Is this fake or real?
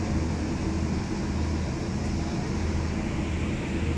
real